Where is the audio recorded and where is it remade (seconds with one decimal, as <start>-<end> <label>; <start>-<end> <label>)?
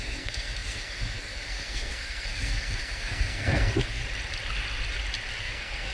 0.0-4.0 remade; 4.0-5.4 recorded; 5.4-5.9 remade